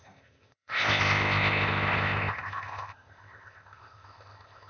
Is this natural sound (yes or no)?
no